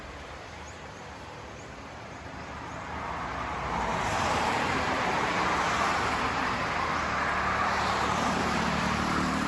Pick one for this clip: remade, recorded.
remade